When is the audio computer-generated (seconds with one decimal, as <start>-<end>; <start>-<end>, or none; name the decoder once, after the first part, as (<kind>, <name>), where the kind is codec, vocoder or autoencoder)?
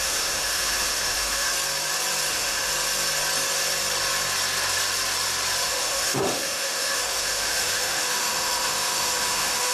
0.0-1.5 (autoencoder, DAC-VAE); 2.3-2.7; 5.6-9.7